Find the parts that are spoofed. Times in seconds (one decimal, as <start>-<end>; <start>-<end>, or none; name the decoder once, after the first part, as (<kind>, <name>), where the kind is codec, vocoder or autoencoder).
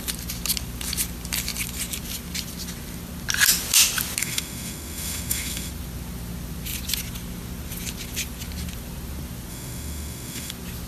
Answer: 4.2-5.7 (autoencoder, DAC-VAE); 9.5-10.5